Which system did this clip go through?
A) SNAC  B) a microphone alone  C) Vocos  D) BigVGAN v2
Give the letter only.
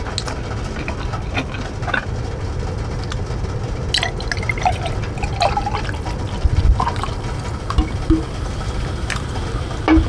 B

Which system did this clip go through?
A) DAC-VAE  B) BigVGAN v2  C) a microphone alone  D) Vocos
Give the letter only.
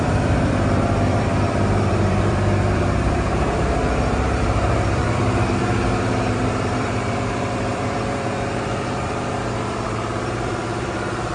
B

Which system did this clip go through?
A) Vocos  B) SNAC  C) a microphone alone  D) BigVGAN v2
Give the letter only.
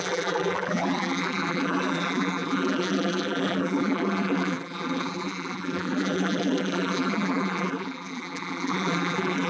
D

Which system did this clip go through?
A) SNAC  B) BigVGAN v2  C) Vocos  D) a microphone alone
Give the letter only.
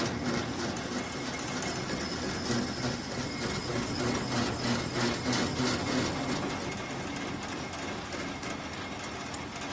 D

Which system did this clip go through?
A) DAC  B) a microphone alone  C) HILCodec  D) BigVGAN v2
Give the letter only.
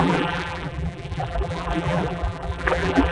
D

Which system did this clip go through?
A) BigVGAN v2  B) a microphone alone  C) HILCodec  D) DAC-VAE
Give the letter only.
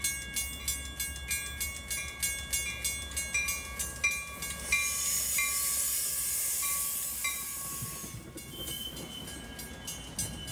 B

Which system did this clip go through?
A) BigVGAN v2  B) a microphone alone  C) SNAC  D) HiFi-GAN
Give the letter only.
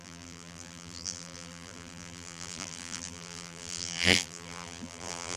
A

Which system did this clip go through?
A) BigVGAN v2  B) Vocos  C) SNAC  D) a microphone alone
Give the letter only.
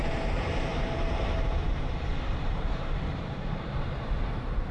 A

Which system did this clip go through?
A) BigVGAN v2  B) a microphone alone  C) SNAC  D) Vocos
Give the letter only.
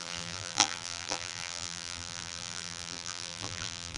A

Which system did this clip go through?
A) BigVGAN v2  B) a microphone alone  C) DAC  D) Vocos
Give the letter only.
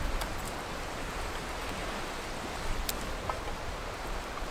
B